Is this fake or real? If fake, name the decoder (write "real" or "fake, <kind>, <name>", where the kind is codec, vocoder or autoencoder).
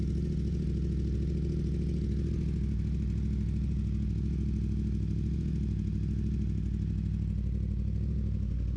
real